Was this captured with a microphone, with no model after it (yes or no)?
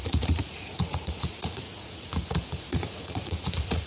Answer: no